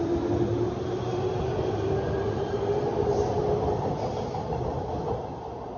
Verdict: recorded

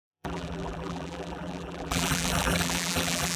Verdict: remade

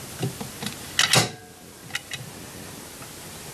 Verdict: recorded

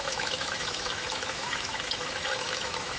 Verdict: remade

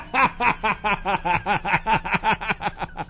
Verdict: recorded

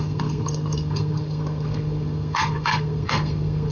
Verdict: remade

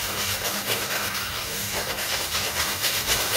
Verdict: remade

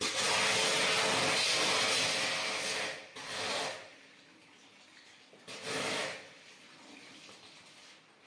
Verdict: recorded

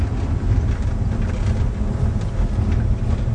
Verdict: recorded